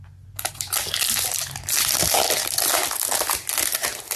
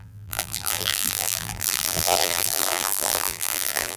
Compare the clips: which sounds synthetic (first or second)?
second